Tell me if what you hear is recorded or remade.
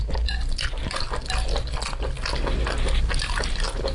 recorded